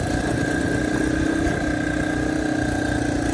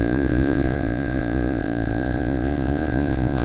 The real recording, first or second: first